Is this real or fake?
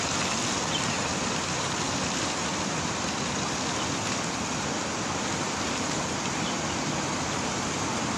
real